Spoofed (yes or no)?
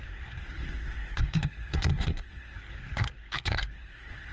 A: yes